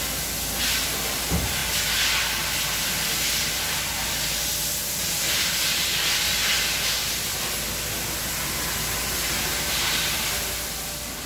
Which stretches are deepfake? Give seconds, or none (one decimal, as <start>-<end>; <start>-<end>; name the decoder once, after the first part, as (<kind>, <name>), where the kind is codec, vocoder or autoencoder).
none